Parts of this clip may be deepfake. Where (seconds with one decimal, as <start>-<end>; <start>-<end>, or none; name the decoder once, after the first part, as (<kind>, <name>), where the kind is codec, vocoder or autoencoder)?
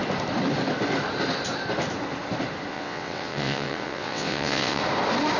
2.7-4.8 (vocoder, WaveNeXt)